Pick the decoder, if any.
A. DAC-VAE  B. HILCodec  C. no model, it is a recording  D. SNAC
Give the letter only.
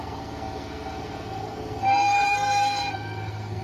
D